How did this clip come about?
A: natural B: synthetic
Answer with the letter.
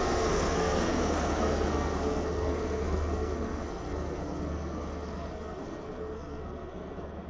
B